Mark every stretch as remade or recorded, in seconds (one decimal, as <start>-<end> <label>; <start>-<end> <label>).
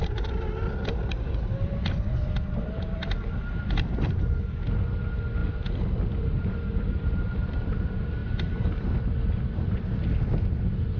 0.0-11.0 recorded